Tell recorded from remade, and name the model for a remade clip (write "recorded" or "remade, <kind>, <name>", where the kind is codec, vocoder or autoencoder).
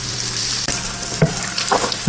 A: remade, vocoder, BigVGAN v2